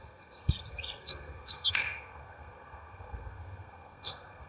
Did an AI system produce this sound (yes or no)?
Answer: yes